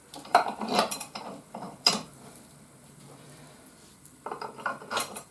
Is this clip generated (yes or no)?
yes